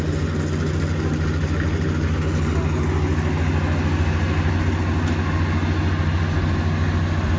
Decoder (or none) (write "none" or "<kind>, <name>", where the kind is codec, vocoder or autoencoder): none